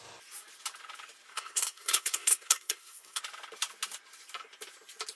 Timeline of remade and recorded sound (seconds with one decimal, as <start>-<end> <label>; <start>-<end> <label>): 0.0-1.3 recorded; 1.3-3.2 remade; 3.2-5.2 recorded